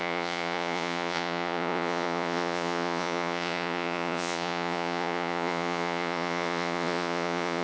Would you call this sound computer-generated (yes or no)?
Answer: yes